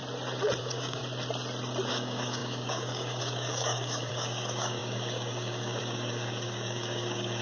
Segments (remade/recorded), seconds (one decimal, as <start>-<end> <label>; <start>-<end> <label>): 0.0-0.6 recorded; 0.6-1.0 remade; 1.0-1.9 recorded; 1.9-7.4 remade